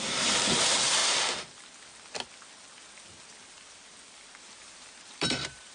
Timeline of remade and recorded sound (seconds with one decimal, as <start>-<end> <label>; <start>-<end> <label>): 0.0-1.0 remade; 1.0-4.4 recorded; 4.4-5.7 remade